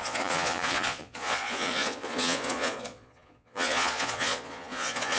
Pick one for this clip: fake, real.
fake